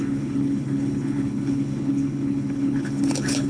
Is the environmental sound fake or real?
fake